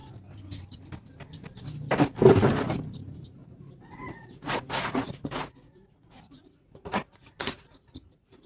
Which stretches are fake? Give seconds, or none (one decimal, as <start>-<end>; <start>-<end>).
3.4-8.5

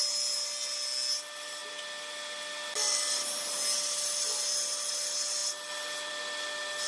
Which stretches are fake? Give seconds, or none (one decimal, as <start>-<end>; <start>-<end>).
none

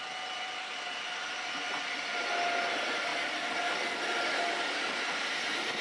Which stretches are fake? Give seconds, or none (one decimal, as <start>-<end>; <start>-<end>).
none

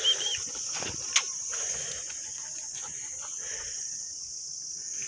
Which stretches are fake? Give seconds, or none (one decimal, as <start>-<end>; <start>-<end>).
1.4-4.5

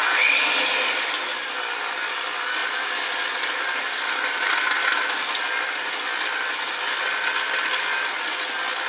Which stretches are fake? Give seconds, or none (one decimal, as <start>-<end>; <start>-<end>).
none

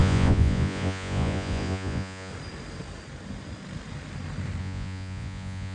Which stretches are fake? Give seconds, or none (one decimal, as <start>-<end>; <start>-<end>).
0.0-2.3; 4.6-5.7